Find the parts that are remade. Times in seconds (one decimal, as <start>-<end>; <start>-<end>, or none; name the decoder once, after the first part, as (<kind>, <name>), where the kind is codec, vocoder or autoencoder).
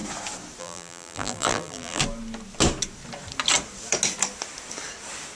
0.6-2.0 (vocoder, BigVGAN v2)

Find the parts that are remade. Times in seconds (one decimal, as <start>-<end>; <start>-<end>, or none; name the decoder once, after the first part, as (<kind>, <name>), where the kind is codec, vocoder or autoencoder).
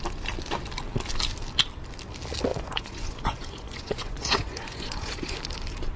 2.5-5.4 (vocoder, Vocos)